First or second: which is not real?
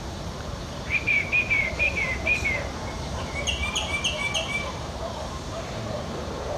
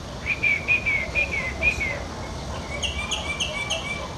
first